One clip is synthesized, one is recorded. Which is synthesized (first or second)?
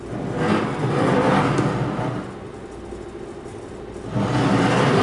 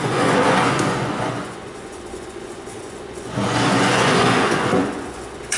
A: second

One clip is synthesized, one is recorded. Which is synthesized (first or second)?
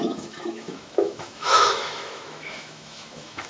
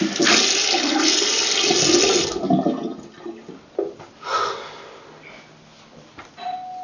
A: first